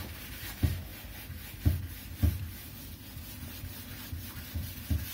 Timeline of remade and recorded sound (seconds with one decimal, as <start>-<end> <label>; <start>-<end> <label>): 0.0-5.1 recorded